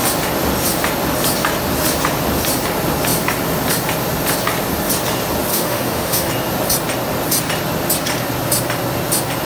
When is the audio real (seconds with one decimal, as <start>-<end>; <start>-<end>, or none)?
0.0-5.5; 6.3-9.4